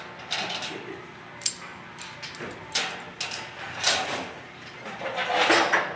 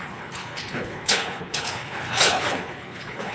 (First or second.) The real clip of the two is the first